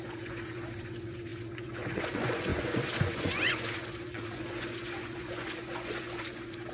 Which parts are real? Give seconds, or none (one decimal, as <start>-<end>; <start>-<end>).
none